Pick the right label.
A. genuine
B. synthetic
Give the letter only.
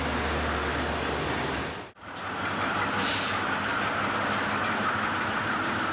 A